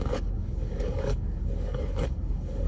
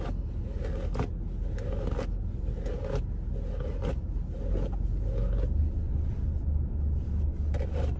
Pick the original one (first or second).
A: second